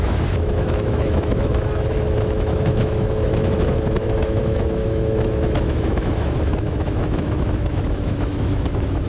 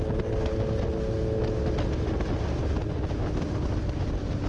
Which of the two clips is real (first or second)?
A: second